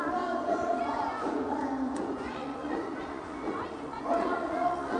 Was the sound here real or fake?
fake